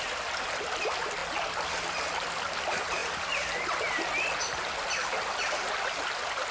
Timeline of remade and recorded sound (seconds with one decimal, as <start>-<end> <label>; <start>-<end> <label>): 0.0-6.5 recorded